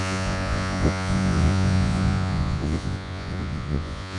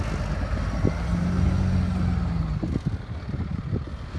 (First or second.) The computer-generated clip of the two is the first